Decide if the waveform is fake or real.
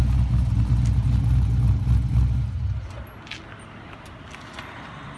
real